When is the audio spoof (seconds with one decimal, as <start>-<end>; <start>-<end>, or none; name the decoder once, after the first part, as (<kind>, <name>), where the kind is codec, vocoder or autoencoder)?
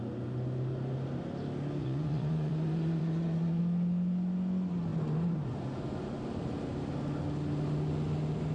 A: 1.8-3.6 (vocoder, Vocos)